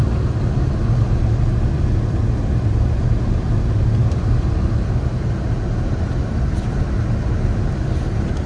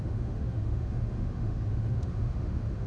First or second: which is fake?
second